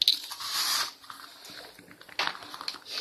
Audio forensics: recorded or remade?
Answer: recorded